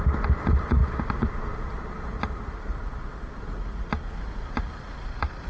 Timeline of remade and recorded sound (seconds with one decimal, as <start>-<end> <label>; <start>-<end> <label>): 0.0-5.5 recorded